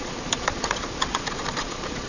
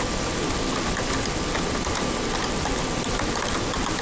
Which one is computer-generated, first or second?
first